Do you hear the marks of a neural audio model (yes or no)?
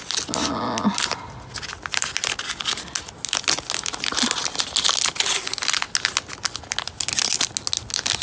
no